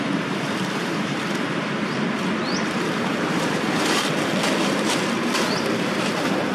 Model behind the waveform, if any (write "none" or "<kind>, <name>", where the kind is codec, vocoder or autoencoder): vocoder, BigVGAN v2